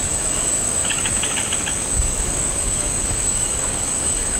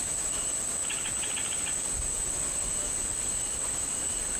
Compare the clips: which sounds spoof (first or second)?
first